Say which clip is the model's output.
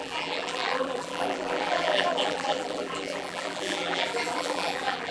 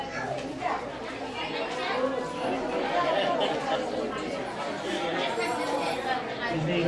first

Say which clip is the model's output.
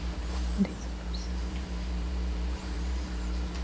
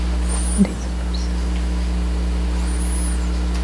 first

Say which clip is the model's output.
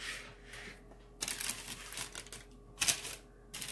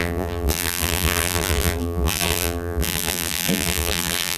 second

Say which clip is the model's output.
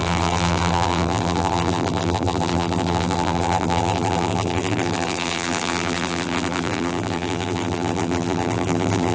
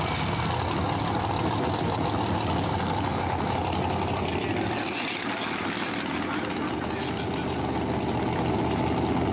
first